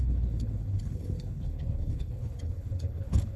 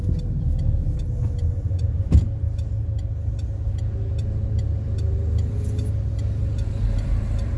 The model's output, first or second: first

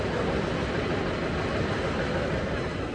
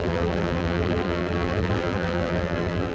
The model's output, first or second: second